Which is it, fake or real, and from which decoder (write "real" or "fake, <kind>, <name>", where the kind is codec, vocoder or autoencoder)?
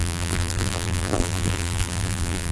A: fake, vocoder, BigVGAN v2